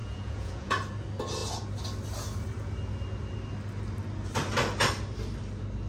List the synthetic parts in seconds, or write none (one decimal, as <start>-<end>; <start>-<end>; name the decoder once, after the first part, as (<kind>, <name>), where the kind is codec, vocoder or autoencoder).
0.0-0.7 (vocoder, Vocos)